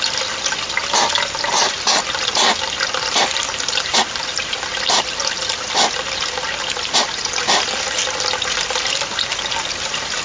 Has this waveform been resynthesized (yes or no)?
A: no